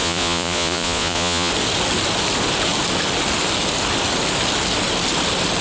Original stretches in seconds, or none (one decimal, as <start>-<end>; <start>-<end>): 1.5-5.6